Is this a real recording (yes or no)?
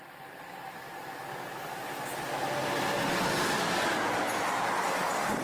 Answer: yes